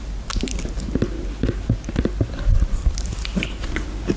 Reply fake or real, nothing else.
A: real